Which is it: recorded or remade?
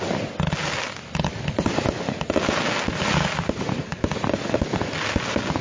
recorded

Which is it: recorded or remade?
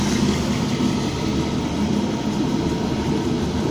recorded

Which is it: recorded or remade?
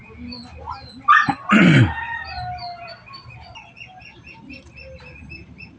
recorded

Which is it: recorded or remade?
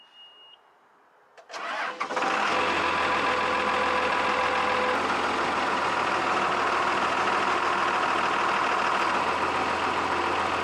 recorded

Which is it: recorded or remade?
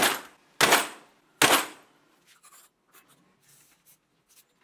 recorded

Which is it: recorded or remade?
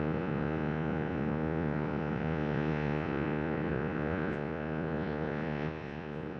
remade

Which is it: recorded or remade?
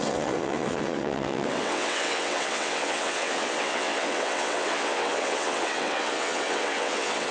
remade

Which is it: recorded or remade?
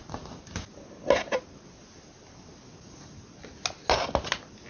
recorded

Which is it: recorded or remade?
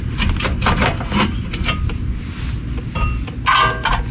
recorded